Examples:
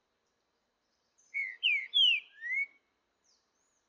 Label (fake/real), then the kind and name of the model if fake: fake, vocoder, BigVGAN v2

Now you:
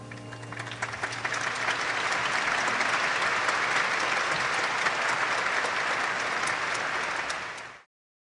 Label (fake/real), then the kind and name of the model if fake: real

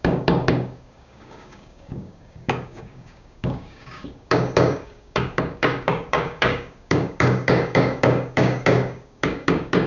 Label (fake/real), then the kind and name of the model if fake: fake, codec, DAC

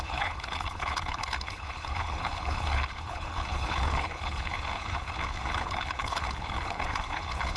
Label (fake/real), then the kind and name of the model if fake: fake, codec, HILCodec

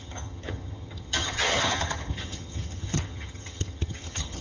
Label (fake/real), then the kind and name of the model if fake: fake, vocoder, HiFi-GAN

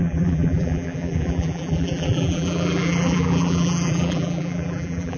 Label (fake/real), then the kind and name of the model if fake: fake, vocoder, BigVGAN v2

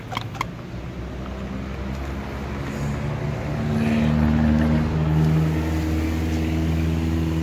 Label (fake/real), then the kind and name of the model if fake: real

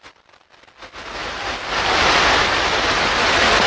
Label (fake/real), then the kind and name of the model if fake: real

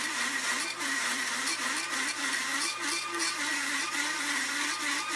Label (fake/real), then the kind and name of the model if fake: real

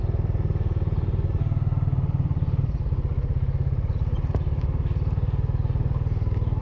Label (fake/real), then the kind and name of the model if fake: real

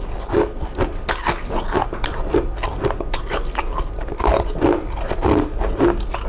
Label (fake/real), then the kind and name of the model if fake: real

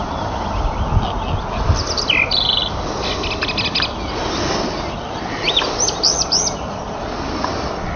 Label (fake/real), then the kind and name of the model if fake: real